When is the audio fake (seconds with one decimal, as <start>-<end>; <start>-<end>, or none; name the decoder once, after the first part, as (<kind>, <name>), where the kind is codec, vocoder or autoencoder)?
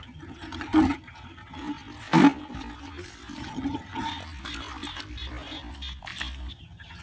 0.0-1.6 (vocoder, HiFi-GAN); 3.4-4.1; 6.5-7.0